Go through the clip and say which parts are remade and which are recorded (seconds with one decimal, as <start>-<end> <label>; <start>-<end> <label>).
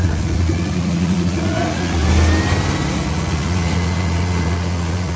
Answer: 0.0-2.0 remade; 2.0-2.9 recorded; 2.9-5.2 remade